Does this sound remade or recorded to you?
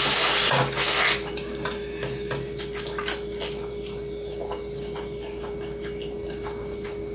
recorded